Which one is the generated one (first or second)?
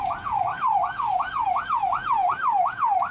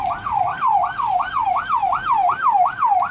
first